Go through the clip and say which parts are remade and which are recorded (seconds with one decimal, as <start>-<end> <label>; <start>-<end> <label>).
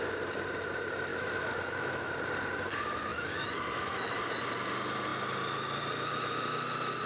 0.0-1.1 recorded; 1.1-2.1 remade; 2.1-3.1 recorded; 3.1-4.2 remade; 4.2-7.1 recorded